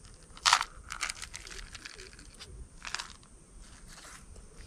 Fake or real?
real